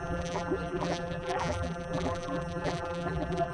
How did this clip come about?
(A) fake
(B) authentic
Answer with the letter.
A